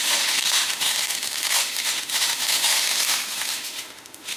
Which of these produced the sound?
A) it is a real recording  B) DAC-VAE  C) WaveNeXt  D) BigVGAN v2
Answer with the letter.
B